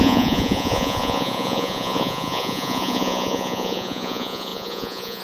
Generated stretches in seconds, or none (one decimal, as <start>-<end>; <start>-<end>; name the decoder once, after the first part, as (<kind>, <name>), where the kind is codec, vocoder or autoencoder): 0.0-5.2 (vocoder, Vocos)